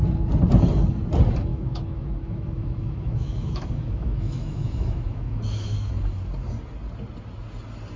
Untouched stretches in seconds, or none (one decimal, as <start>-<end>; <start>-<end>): 0.0-1.5; 5.9-8.0